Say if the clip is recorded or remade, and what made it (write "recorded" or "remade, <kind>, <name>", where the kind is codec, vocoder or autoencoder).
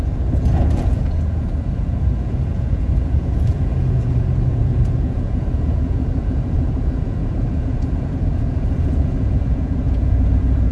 remade, vocoder, Vocos